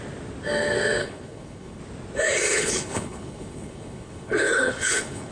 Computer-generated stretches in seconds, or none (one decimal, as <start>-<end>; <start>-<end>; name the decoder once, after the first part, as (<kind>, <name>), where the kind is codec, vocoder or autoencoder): 1.0-1.8 (codec, HILCodec); 2.5-5.3